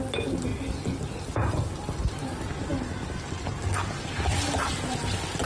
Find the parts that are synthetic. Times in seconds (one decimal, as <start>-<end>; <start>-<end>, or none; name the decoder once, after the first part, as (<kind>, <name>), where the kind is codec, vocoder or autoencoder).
none